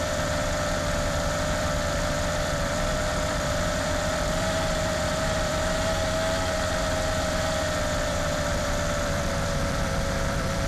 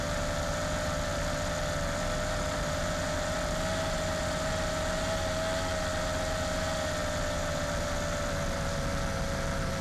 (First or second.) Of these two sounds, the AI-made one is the first